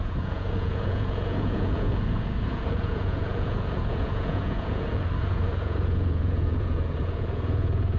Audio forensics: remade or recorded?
remade